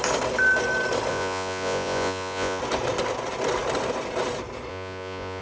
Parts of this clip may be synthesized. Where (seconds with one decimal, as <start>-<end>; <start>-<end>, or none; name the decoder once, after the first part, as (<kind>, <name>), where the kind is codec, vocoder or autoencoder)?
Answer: 1.1-2.6 (vocoder, Vocos); 4.7-5.4